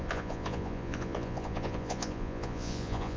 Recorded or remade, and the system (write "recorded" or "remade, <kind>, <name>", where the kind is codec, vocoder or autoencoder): remade, vocoder, Vocos